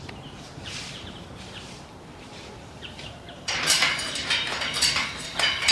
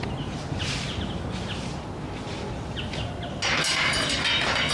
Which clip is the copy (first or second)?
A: first